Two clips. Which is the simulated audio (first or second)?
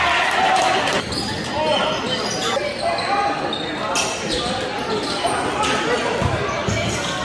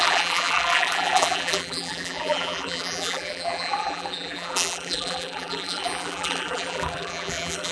second